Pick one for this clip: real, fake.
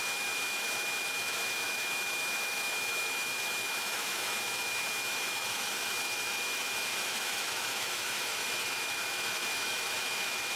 fake